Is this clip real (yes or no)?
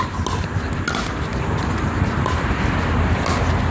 yes